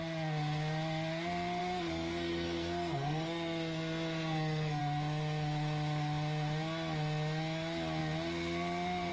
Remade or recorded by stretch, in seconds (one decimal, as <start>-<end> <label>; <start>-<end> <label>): 0.0-1.6 recorded; 1.6-4.8 remade; 4.8-9.1 recorded